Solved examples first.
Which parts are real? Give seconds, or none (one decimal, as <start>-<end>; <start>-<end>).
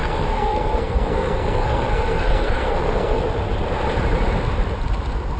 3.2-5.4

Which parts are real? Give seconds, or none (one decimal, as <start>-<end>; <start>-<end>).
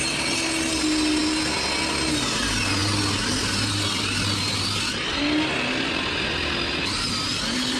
0.0-7.8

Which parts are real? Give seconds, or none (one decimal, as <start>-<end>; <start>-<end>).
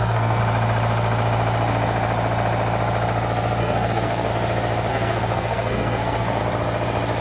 0.4-3.6; 4.3-4.9; 6.4-7.2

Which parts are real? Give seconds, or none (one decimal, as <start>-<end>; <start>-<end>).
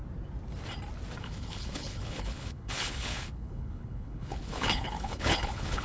0.0-1.2